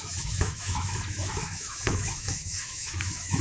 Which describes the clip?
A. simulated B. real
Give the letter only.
A